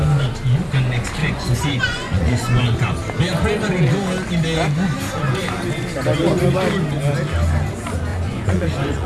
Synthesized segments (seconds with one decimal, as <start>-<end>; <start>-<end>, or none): 1.2-2.6; 8.1-9.1